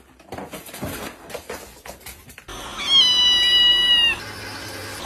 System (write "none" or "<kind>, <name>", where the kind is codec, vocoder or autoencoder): none